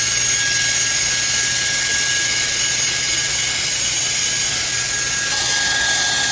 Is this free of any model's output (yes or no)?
yes